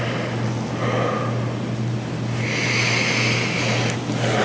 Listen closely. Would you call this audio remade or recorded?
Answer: recorded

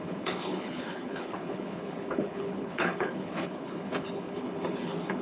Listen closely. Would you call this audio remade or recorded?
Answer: remade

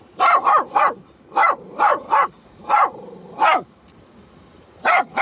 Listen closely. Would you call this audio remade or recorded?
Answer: remade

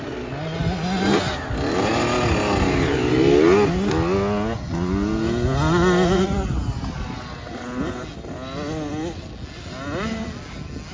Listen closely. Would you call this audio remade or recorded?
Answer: recorded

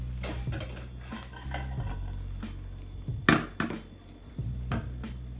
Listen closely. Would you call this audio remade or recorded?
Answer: recorded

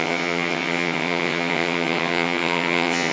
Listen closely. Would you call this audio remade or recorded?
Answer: remade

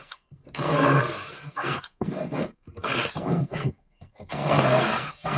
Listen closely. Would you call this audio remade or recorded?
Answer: remade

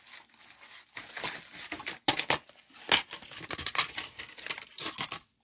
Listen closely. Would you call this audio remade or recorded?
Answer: recorded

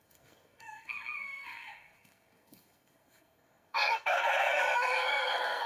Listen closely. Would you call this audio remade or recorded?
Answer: remade